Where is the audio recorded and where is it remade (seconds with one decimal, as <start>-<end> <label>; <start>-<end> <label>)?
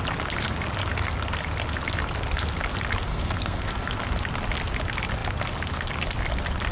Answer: 0.0-3.1 recorded; 3.1-3.7 remade; 3.7-6.7 recorded